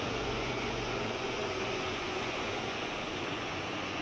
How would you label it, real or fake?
fake